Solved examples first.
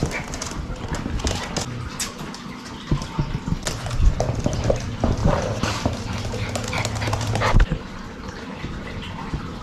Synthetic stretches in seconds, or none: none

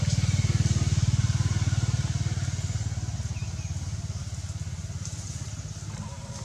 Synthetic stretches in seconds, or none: none

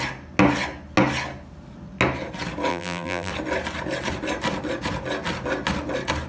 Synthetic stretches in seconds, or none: 2.7-3.3 (vocoder, BigVGAN v2)

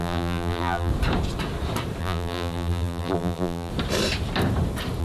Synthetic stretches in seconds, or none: 0.0-0.9 (vocoder, BigVGAN v2); 2.0-3.7